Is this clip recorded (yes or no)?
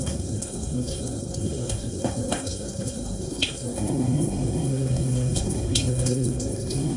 no